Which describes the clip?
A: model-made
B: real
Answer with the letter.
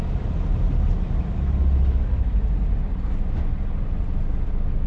B